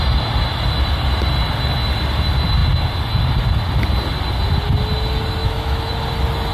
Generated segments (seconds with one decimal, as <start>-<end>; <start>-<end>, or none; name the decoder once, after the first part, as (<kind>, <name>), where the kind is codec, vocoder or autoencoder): 5.4-5.9 (autoencoder, DAC-VAE)